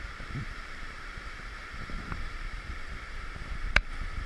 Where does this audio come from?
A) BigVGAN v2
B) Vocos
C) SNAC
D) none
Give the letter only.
A